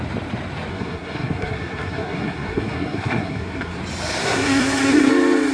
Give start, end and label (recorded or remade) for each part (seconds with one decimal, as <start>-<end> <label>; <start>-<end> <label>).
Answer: 0.0-0.7 recorded; 0.7-3.8 remade; 3.8-4.2 recorded; 4.2-5.1 remade; 5.1-5.5 recorded